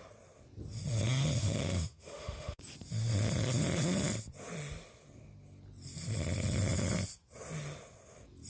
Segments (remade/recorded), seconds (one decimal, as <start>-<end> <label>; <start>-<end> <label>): 0.0-1.4 recorded; 1.4-2.6 remade; 2.6-8.5 recorded

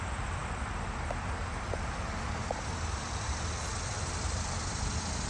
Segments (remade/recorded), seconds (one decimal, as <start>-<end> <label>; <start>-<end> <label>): 0.0-5.3 recorded

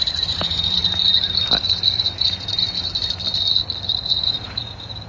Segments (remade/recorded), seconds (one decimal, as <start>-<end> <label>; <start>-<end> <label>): 0.0-0.8 remade; 0.8-2.0 recorded; 2.0-2.5 remade; 2.5-4.0 recorded; 4.0-5.1 remade

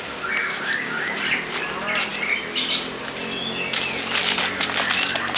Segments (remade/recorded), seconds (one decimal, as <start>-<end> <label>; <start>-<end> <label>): 0.0-0.4 recorded; 0.4-1.2 remade; 1.2-5.4 recorded